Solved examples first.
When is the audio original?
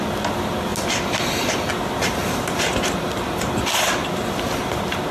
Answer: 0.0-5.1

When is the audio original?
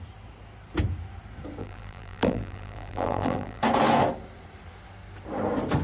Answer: 0.0-1.6; 3.6-5.8